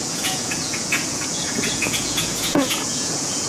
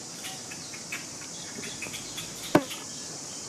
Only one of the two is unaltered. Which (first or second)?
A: second